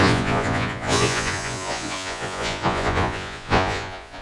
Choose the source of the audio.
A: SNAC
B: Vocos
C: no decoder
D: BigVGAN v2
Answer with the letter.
B